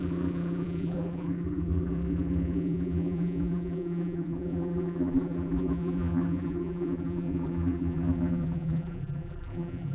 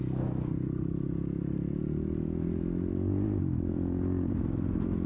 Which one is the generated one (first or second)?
first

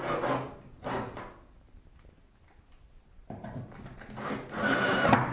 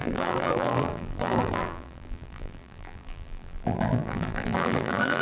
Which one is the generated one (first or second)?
second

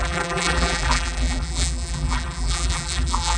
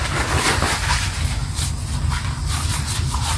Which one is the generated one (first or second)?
first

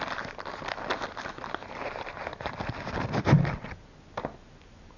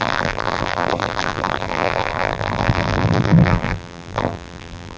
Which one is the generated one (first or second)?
second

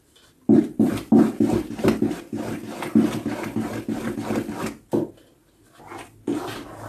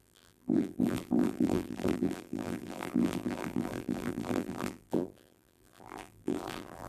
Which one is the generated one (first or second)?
second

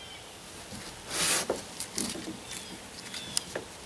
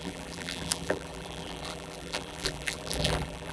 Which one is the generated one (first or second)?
second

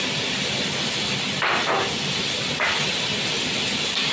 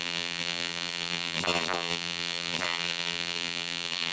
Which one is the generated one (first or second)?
second